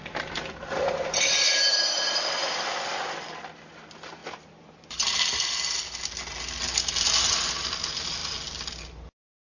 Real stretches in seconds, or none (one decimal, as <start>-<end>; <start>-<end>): 0.6-4.2; 5.5-9.4